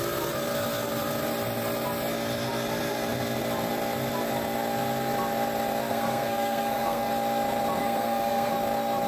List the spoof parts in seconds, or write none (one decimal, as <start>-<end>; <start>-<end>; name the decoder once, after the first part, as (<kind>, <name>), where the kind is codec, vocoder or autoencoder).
5.9-7.1 (codec, SNAC); 7.8-8.5